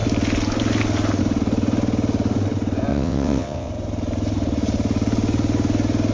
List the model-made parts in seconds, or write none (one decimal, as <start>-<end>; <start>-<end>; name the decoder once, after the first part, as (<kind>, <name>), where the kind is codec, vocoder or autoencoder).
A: 2.9-3.7 (vocoder, WaveNeXt)